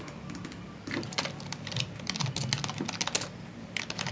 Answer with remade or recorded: recorded